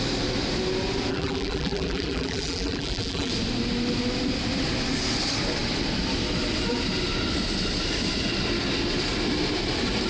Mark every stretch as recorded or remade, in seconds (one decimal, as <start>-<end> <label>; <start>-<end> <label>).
0.0-1.1 recorded; 1.1-3.3 remade; 3.3-10.1 recorded